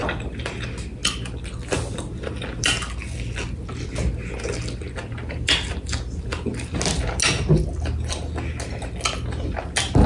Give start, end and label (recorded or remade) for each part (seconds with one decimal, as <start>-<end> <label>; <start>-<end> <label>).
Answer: 0.0-10.1 recorded